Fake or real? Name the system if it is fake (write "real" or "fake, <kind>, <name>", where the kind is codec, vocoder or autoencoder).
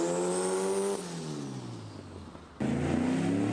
real